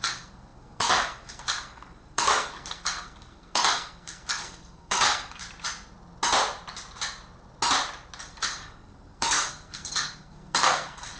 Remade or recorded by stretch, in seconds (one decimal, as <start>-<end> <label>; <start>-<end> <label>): 0.0-5.4 remade; 5.4-8.2 recorded; 8.2-11.2 remade